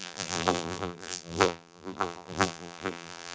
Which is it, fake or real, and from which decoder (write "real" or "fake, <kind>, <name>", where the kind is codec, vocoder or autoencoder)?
fake, vocoder, BigVGAN v2